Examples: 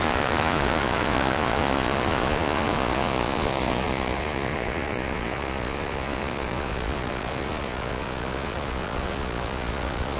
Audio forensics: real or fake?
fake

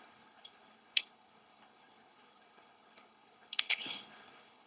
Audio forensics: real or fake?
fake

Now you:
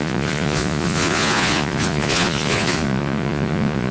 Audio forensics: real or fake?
fake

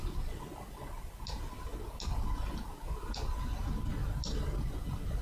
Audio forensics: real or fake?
real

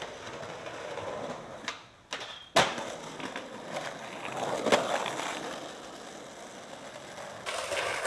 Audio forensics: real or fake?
real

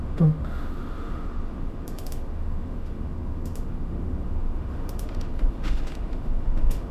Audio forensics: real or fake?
fake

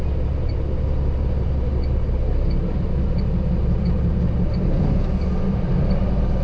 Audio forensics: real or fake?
real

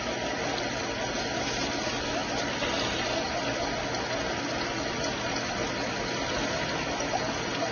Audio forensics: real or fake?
real